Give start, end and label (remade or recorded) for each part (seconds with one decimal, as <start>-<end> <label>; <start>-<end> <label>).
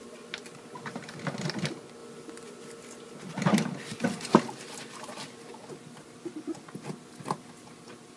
0.0-8.2 recorded